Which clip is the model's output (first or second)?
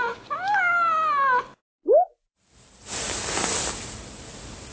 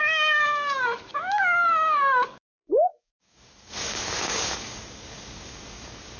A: second